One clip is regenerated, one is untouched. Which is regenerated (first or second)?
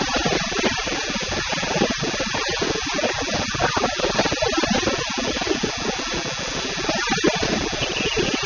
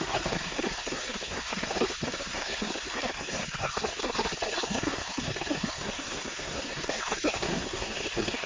second